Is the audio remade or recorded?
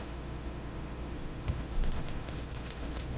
remade